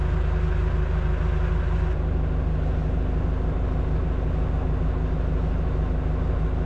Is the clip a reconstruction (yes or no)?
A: no